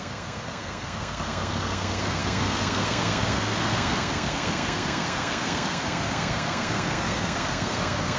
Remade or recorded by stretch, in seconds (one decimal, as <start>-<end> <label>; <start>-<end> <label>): 0.0-8.2 remade